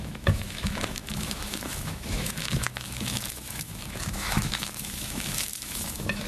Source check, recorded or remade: remade